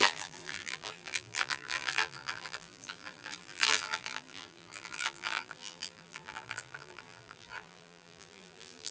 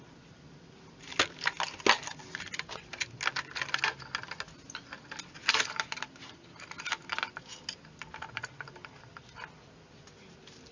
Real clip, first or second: second